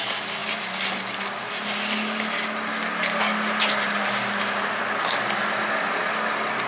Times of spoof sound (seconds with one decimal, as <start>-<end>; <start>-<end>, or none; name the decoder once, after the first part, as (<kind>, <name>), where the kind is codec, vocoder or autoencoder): none